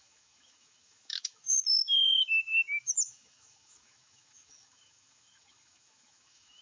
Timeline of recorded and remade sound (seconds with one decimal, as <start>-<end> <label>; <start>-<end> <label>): 0.0-6.6 remade